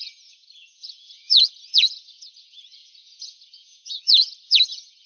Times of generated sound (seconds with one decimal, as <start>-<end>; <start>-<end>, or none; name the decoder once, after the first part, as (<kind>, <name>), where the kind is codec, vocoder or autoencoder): 0.0-5.1 (vocoder, Vocos)